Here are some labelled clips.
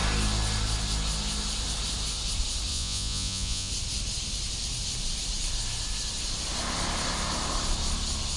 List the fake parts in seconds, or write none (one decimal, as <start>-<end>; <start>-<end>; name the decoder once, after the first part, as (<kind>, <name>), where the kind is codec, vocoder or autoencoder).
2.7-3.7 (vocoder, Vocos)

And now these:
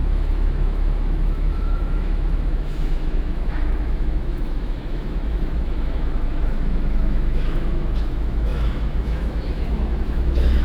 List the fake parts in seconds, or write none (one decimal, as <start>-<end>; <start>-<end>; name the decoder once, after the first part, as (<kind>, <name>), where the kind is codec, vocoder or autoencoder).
0.0-10.6 (autoencoder, DAC-VAE)

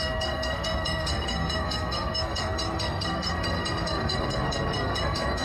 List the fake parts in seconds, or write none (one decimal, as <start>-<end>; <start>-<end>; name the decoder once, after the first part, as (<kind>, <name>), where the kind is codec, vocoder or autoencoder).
0.0-5.4 (codec, SNAC)

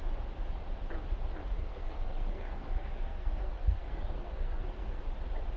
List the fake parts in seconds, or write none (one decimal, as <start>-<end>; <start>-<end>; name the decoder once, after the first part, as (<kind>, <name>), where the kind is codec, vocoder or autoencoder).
1.6-5.0 (codec, SNAC)

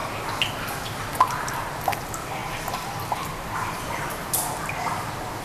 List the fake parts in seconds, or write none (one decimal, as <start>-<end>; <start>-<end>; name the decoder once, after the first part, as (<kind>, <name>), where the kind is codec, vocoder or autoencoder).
none

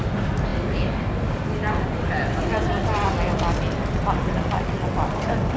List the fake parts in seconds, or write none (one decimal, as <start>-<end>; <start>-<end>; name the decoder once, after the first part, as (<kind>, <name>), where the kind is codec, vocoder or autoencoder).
none

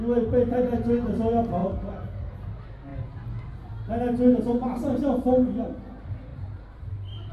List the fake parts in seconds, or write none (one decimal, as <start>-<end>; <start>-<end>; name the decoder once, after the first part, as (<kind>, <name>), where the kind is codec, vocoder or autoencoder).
6.3-7.3 (vocoder, BigVGAN v2)